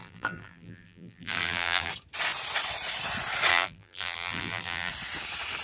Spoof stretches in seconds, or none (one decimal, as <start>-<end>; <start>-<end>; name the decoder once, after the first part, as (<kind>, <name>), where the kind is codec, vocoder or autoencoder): 0.0-1.9 (vocoder, BigVGAN v2); 3.5-4.9